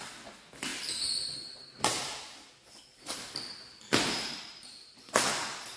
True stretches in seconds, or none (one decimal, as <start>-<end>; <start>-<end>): 0.0-0.7; 1.8-3.7; 5.0-5.8